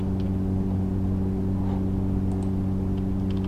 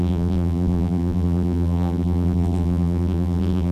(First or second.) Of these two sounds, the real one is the first